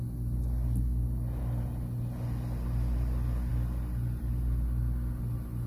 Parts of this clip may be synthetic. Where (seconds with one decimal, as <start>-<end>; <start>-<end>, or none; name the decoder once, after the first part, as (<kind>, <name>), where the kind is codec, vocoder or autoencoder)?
none